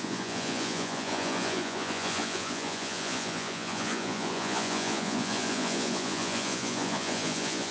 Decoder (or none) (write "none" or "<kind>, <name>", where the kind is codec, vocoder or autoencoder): vocoder, Vocos